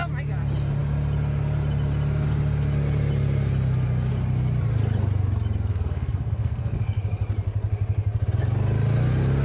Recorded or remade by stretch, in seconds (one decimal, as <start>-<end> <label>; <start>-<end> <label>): 0.0-5.7 recorded; 5.7-7.0 remade; 7.0-9.4 recorded